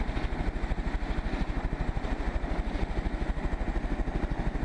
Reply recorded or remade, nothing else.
recorded